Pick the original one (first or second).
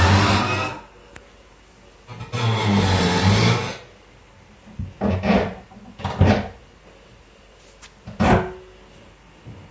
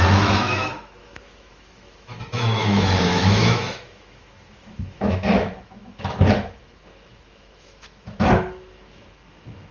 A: first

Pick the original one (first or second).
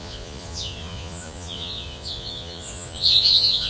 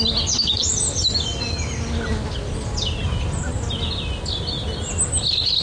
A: second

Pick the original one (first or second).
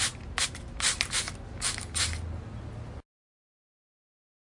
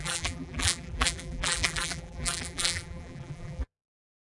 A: first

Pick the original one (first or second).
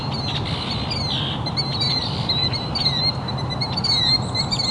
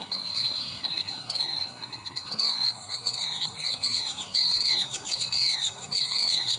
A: first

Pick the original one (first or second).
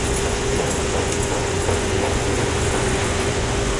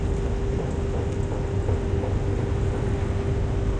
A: second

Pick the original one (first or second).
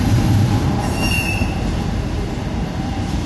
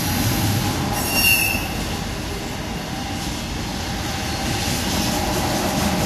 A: second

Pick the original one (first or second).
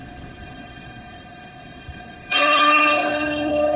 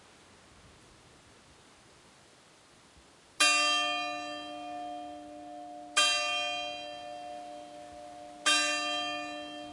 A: second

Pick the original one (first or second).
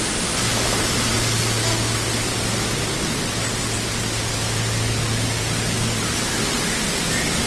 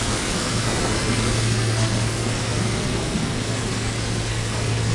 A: first